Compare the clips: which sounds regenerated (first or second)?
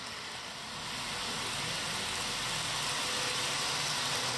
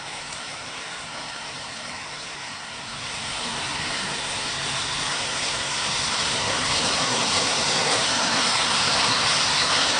second